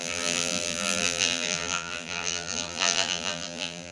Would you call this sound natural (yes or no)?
no